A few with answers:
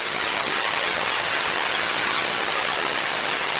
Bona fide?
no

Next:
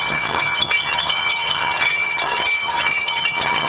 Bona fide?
no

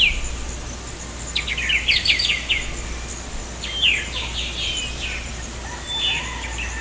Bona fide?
yes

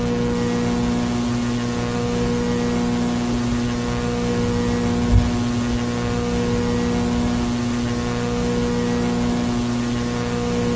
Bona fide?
yes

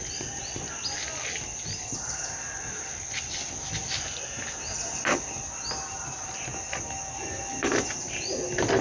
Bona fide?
yes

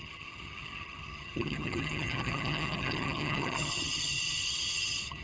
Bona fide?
no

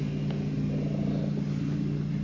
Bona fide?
yes